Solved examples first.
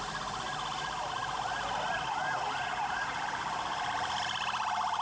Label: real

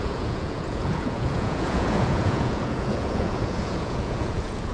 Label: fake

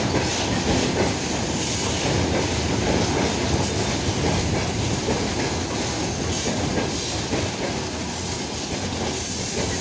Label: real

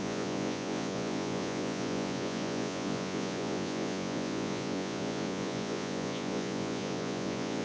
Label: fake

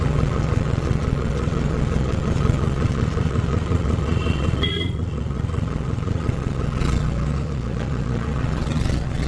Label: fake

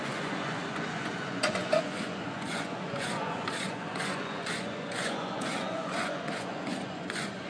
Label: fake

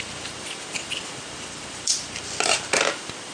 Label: real